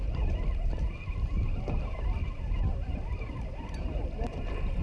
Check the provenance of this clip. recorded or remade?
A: recorded